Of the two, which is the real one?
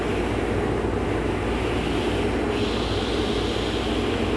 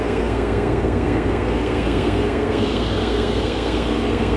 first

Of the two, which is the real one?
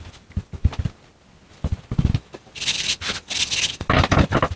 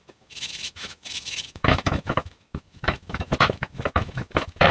first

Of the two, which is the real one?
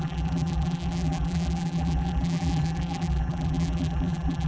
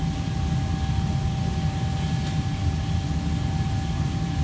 second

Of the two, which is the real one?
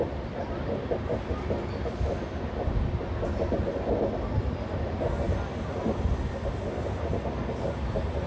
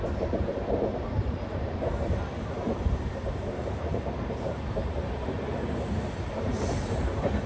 first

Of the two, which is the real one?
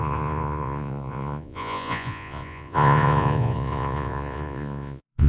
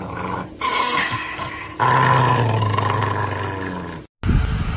second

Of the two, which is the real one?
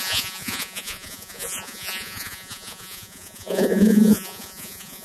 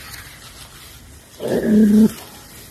second